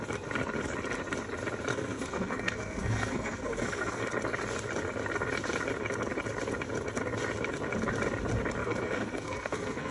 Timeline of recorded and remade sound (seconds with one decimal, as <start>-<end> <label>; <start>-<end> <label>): 0.0-1.7 recorded; 1.7-4.0 remade; 4.0-8.6 recorded; 8.6-9.9 remade